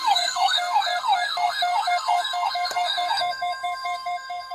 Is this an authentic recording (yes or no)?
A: no